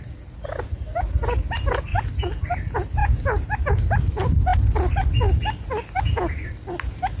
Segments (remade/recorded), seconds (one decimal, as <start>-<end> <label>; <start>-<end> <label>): 0.0-7.2 recorded